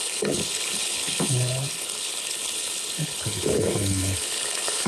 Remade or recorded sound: remade